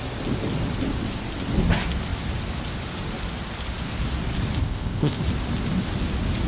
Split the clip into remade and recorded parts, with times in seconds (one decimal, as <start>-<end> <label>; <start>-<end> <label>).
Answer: 0.0-4.6 recorded; 4.6-5.2 remade; 5.2-6.5 recorded